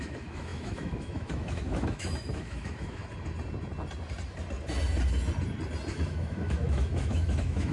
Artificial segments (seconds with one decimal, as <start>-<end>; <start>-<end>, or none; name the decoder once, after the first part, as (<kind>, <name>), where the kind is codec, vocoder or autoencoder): 0.0-3.0 (autoencoder, DAC-VAE); 5.9-7.7